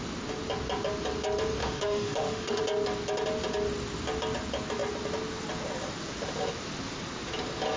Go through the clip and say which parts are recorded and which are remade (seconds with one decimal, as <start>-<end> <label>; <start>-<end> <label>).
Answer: 0.0-1.6 recorded; 1.6-2.6 remade; 2.6-7.8 recorded